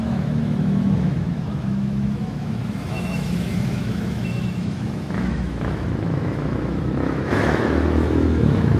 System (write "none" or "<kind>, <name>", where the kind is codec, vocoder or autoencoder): autoencoder, DAC-VAE